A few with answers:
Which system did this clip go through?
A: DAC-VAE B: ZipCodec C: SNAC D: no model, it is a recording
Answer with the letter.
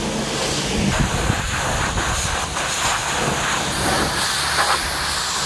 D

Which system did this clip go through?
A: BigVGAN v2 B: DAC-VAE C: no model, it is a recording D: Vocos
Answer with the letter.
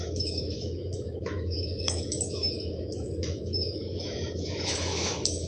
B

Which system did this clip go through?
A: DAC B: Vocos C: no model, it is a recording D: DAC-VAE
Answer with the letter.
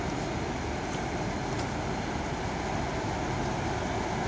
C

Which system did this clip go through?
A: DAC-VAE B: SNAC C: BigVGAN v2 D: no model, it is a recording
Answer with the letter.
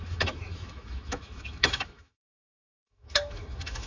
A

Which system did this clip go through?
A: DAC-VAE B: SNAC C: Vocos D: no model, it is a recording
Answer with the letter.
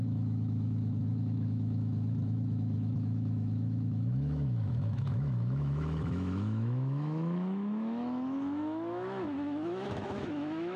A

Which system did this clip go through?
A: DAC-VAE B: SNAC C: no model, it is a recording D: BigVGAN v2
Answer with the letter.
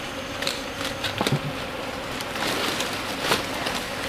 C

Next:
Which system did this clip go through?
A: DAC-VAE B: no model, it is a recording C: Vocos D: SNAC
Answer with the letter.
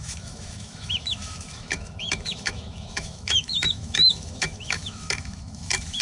A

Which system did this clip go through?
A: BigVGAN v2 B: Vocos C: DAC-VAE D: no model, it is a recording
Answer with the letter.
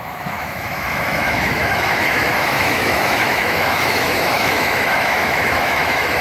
C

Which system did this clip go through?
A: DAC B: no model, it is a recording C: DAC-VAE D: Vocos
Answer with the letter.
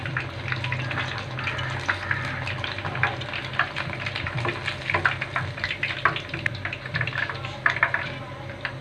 B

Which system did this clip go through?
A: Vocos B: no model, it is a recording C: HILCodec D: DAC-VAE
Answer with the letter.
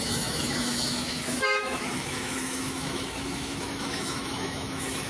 D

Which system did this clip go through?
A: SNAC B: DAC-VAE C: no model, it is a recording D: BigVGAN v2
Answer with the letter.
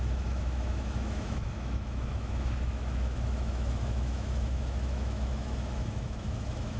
B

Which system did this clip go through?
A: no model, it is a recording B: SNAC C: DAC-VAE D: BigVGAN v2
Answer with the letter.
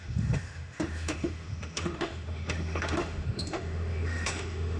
C